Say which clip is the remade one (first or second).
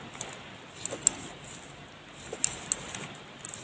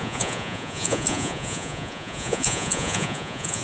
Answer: second